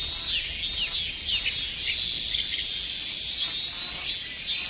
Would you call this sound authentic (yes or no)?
yes